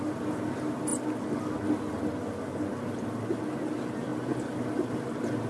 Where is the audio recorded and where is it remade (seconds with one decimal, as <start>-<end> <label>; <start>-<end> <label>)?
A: 0.0-5.5 recorded